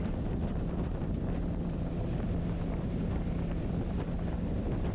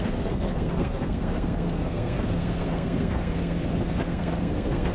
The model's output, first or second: second